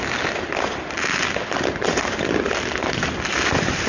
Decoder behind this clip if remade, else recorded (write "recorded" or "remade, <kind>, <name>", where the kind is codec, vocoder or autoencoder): recorded